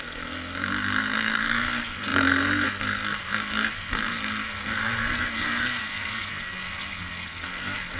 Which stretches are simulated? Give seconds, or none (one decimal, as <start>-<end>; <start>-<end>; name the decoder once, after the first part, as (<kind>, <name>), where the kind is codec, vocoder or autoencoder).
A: 0.0-8.0 (codec, SNAC)